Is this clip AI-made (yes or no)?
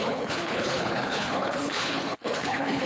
yes